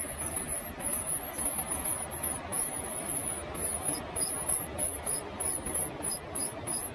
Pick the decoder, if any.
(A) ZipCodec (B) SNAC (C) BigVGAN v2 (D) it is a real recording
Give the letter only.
D